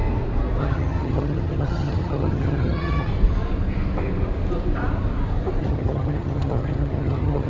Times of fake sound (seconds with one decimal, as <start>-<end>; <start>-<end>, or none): 0.6-3.1; 5.6-7.5